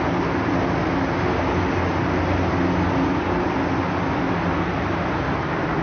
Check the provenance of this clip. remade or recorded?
recorded